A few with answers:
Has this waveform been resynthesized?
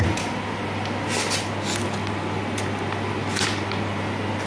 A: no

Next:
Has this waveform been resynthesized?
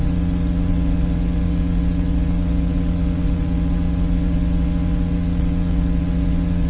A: yes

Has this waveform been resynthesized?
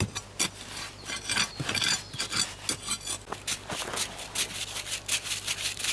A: no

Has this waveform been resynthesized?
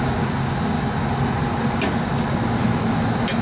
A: no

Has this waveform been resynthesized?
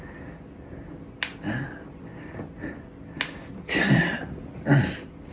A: no